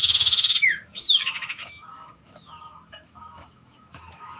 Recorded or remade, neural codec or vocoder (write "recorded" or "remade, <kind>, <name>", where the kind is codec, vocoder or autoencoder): remade, autoencoder, DAC-VAE